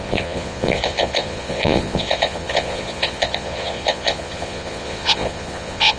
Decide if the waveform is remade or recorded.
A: remade